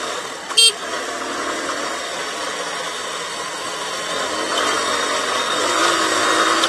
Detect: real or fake real